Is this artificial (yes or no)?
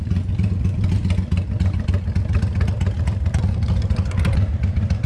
no